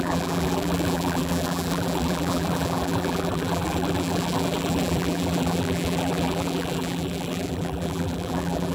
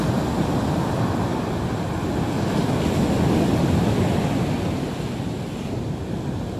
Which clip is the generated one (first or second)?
first